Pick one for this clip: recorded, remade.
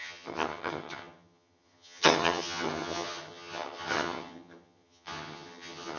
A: remade